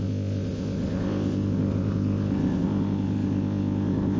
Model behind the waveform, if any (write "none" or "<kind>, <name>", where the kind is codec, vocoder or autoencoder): codec, ZipCodec